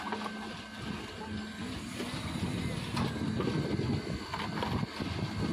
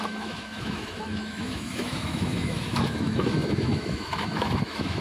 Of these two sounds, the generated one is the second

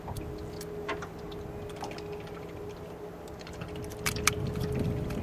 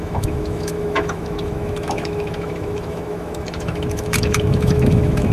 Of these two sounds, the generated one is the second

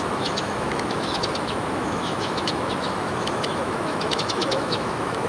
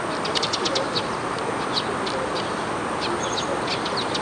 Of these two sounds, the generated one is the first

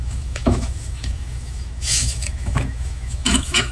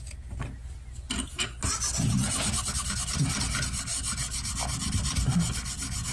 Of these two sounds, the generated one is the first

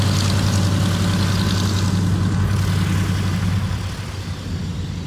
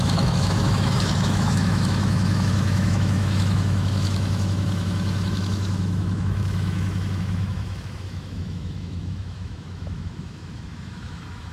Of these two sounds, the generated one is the second